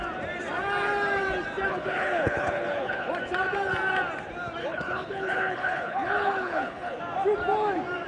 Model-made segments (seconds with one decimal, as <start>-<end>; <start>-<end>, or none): 1.7-3.1; 4.6-7.0